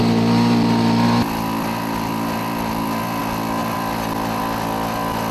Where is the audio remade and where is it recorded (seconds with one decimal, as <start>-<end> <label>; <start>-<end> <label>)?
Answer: 0.0-3.2 remade; 3.2-3.6 recorded; 3.6-4.4 remade; 4.4-5.3 recorded